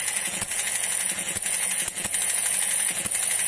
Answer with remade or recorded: remade